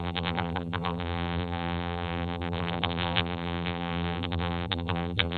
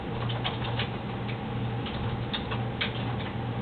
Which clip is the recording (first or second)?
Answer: second